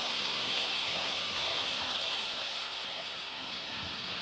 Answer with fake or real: fake